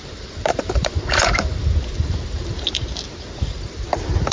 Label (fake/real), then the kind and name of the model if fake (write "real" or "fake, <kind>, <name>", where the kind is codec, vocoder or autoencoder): fake, vocoder, BigVGAN v2